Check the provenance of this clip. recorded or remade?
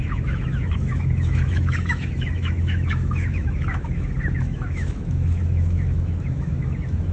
remade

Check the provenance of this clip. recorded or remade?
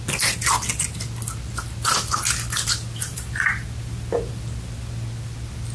recorded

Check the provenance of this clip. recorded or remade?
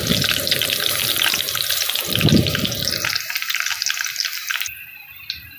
recorded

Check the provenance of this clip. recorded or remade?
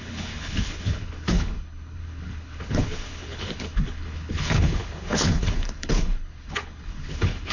remade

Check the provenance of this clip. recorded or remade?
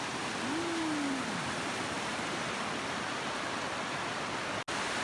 recorded